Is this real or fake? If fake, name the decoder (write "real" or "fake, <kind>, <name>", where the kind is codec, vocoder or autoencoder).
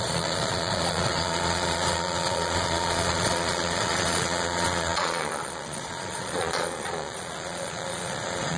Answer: fake, vocoder, Vocos